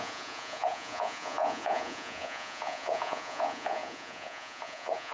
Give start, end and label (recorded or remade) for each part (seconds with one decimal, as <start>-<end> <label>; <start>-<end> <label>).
0.0-5.1 remade